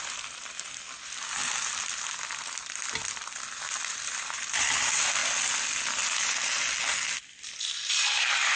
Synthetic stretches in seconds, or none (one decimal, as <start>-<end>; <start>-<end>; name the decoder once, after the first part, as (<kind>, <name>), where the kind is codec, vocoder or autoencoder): 0.0-1.4 (vocoder, BigVGAN v2); 4.0-5.2; 7.3-8.6